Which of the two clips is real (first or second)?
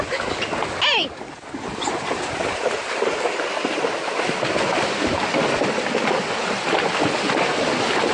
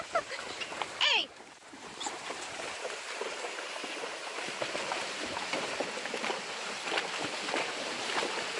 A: first